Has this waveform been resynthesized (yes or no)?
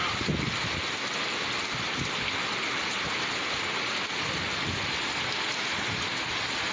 no